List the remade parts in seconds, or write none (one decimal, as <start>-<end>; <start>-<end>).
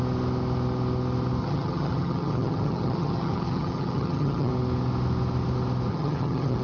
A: 1.4-4.5; 5.9-6.6